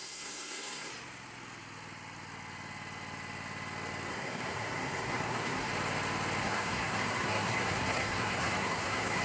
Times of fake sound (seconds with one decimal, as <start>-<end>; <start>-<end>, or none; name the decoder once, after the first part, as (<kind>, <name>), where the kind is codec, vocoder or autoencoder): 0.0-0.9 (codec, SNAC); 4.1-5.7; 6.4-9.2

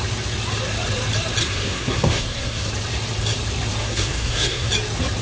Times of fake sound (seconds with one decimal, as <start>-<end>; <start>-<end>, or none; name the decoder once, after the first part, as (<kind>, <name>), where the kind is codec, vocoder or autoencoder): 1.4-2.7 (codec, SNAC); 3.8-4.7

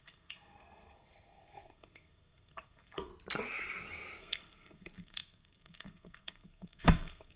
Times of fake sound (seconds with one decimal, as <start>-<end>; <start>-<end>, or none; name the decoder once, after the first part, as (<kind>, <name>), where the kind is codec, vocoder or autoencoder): 0.0-3.1 (codec, SNAC); 4.2-7.4